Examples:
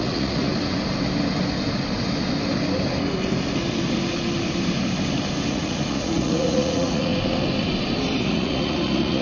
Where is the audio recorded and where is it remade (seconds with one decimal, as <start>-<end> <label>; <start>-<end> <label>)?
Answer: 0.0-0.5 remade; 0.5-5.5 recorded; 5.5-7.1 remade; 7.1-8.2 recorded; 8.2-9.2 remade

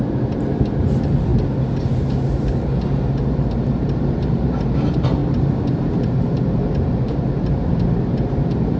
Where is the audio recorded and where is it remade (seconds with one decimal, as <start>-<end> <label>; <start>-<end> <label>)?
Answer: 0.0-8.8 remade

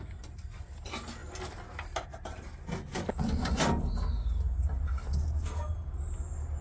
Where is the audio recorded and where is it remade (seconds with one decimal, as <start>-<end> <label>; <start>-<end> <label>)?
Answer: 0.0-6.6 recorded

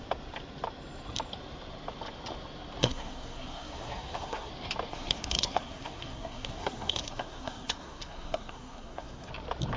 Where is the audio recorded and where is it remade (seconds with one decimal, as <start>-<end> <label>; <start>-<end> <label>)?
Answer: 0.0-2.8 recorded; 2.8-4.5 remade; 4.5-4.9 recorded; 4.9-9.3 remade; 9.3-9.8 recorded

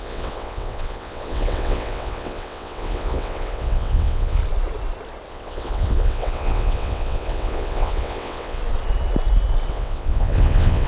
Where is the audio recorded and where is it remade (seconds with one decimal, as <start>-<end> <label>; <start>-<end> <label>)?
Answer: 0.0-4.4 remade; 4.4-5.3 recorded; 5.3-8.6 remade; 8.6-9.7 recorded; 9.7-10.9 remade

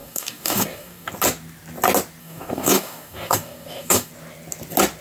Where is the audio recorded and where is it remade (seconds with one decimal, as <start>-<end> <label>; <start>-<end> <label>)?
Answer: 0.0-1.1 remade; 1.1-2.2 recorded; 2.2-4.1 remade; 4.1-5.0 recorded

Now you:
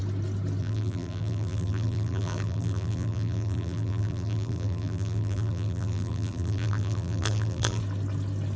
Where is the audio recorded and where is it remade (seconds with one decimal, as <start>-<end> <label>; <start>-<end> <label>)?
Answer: 0.0-0.6 recorded; 0.6-7.8 remade; 7.8-8.6 recorded